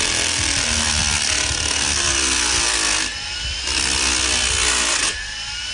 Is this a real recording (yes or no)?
yes